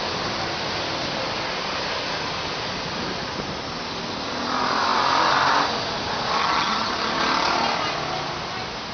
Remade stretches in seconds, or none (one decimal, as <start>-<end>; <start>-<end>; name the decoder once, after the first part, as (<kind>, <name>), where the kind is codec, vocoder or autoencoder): 6.4-6.9 (vocoder, HiFi-GAN)